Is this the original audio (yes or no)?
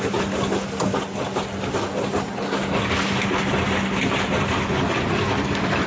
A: yes